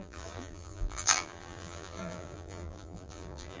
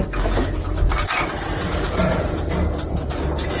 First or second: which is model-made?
first